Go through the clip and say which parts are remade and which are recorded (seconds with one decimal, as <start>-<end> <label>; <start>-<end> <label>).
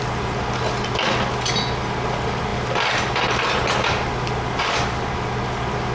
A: 0.0-5.9 recorded